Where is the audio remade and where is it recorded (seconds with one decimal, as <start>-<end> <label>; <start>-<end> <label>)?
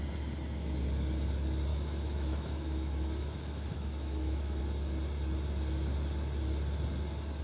0.0-1.7 recorded; 1.7-4.6 remade; 4.6-7.4 recorded